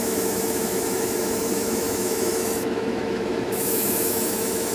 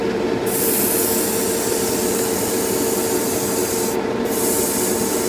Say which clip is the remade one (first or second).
first